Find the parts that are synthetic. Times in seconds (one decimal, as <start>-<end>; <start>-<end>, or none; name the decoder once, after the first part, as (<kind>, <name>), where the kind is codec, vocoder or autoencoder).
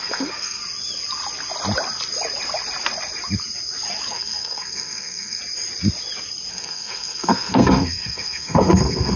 0.0-0.6 (codec, SNAC); 4.1-5.4; 6.5-9.2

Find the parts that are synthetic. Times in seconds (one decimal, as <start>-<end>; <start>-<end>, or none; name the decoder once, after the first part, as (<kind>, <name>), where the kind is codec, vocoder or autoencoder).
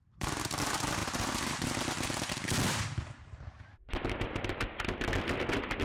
none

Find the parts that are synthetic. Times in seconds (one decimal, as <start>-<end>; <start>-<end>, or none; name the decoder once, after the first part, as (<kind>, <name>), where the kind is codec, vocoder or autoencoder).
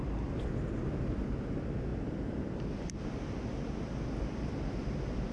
none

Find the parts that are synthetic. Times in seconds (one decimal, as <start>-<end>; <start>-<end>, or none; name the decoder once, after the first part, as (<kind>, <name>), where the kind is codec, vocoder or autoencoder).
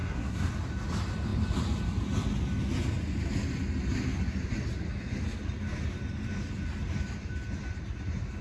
0.0-0.5 (codec, SNAC)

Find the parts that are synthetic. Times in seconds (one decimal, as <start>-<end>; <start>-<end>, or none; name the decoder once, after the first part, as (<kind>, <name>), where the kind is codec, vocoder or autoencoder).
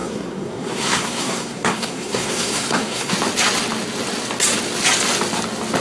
0.0-3.1 (codec, SNAC)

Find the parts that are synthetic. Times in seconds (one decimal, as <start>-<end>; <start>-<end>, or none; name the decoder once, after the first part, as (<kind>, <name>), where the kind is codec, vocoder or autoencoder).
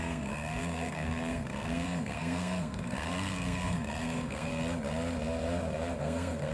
0.0-4.5 (codec, SNAC); 6.0-6.5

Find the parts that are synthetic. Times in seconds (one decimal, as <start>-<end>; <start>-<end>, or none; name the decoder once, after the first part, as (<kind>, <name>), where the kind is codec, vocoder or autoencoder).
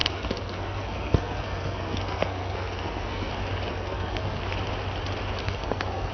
0.0-3.3 (codec, SNAC); 3.7-4.4; 5.4-6.1